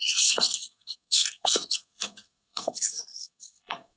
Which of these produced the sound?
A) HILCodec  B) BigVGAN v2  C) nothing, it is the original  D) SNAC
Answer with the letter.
D